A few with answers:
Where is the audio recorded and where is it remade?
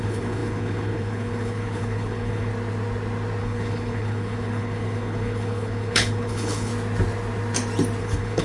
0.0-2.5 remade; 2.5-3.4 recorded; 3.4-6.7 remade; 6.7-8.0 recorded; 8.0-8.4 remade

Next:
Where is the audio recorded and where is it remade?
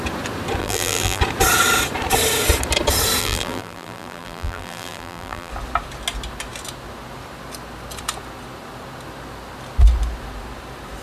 0.0-0.6 recorded; 0.6-1.2 remade; 1.2-3.2 recorded; 3.2-5.5 remade; 5.5-11.0 recorded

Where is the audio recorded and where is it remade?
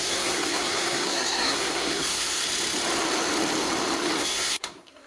0.0-2.4 remade; 2.4-4.2 recorded; 4.2-5.1 remade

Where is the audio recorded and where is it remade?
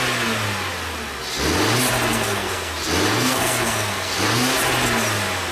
0.0-2.1 recorded; 2.1-2.7 remade; 2.7-3.1 recorded; 3.1-4.2 remade; 4.2-5.5 recorded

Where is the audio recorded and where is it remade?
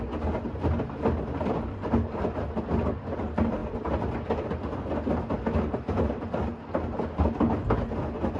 0.0-8.4 recorded